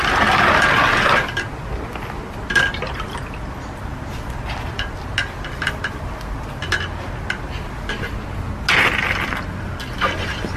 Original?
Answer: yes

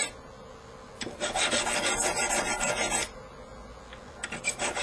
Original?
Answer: yes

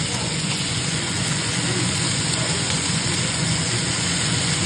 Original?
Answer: no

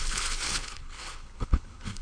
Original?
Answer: no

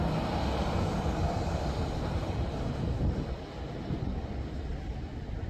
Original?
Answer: yes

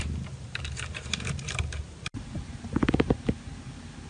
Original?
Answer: no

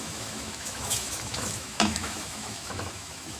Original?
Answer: no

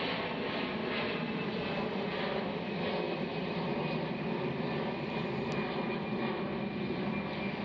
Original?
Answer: yes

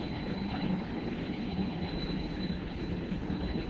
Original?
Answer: no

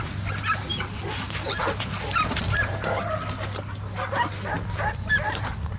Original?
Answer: yes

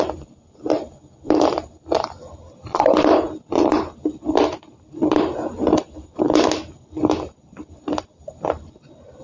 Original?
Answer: yes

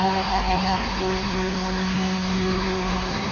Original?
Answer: no